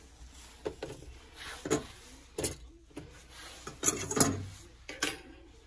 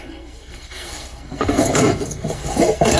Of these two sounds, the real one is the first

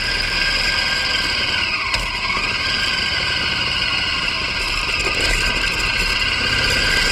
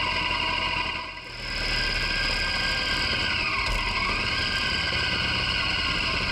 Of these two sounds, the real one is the second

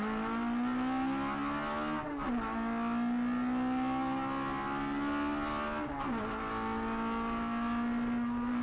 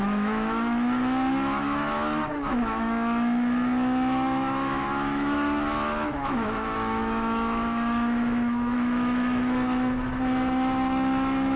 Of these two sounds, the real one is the first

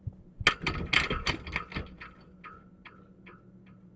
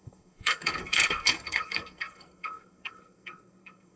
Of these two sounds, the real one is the first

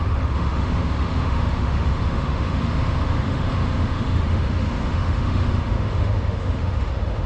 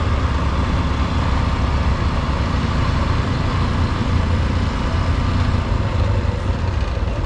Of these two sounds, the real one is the second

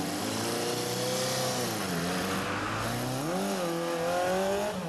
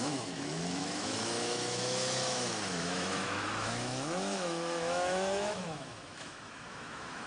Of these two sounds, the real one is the first